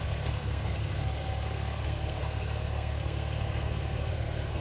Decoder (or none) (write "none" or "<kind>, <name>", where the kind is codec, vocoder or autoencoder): codec, SNAC